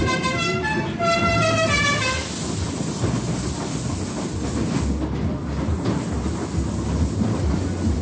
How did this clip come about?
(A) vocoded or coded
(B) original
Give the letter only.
B